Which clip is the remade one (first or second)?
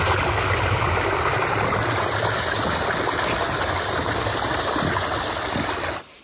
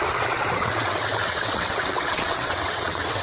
second